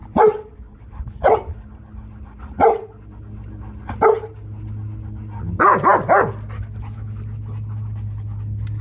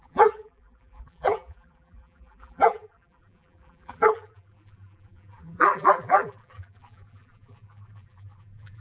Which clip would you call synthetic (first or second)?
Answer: second